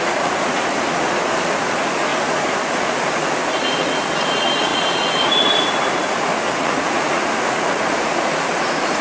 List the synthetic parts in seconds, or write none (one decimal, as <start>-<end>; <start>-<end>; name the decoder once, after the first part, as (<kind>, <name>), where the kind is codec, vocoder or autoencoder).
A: 0.0-2.1 (vocoder, Vocos); 2.7-9.0